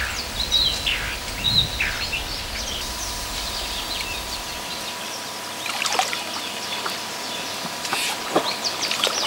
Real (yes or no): yes